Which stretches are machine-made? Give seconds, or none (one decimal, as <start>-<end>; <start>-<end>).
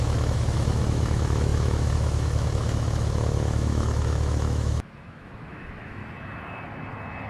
0.0-6.0